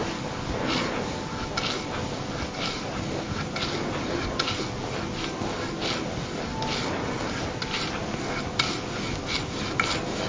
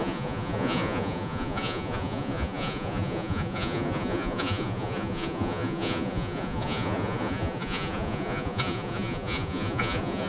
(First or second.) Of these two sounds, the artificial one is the second